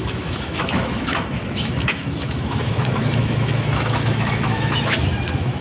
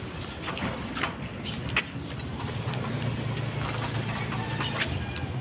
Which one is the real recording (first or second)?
second